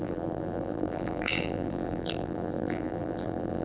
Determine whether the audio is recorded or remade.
remade